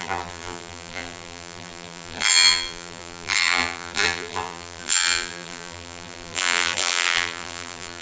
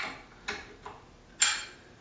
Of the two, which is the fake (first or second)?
first